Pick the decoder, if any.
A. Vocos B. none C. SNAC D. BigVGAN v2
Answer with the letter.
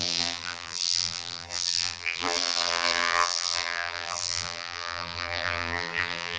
D